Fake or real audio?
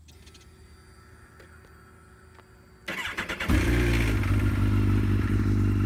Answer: real